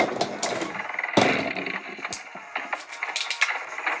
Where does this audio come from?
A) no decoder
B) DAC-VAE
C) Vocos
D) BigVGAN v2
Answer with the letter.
A